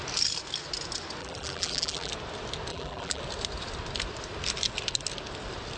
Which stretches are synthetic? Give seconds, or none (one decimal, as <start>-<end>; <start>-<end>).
1.2-2.1; 2.7-3.2